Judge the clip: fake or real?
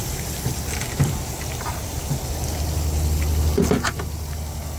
real